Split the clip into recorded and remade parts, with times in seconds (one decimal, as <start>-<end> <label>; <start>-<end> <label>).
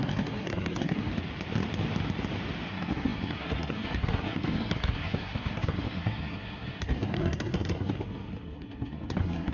0.0-1.1 remade; 1.1-2.7 recorded; 2.7-9.5 remade